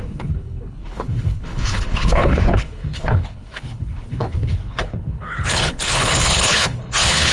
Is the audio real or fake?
fake